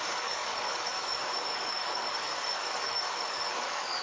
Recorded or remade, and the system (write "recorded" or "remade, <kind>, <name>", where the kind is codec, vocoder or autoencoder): remade, codec, DAC